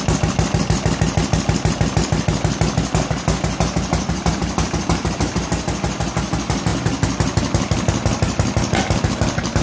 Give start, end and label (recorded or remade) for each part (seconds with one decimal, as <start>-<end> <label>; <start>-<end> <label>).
0.0-9.6 recorded